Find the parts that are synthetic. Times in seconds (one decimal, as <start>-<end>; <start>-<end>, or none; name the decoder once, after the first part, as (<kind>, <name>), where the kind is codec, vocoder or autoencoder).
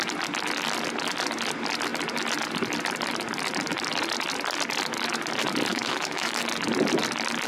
5.7-6.4 (autoencoder, DAC-VAE)